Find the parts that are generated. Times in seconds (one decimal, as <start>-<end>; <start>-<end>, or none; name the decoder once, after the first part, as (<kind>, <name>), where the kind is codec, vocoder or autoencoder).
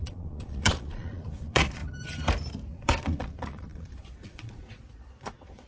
0.0-1.8 (vocoder, Vocos); 2.7-5.7